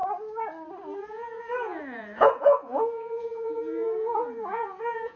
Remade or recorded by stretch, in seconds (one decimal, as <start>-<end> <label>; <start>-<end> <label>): 0.0-1.0 recorded; 1.0-5.2 remade

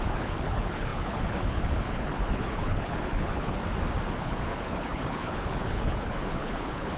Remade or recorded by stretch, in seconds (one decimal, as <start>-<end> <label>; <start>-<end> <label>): 0.0-3.6 remade; 3.6-4.2 recorded; 4.2-7.0 remade

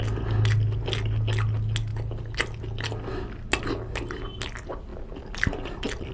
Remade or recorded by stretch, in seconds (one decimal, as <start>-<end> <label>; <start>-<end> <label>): 0.0-4.9 recorded; 4.9-6.1 remade